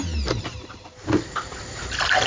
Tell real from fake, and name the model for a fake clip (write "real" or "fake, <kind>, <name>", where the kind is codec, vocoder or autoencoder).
real